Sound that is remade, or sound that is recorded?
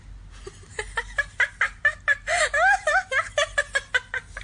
recorded